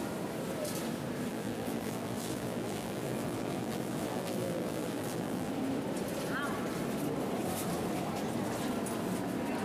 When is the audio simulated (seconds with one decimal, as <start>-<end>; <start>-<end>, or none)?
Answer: 1.3-5.5